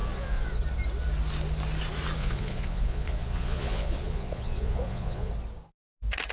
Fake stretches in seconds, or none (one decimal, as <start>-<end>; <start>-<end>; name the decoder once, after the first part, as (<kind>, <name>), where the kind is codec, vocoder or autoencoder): 0.0-0.6 (vocoder, Vocos); 2.2-5.3